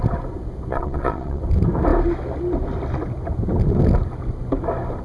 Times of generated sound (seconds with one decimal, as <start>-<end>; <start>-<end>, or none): 0.7-1.4